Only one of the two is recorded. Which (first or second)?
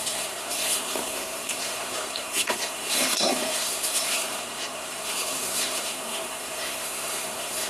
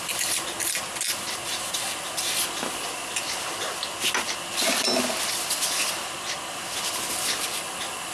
second